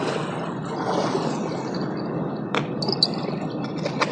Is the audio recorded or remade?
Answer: recorded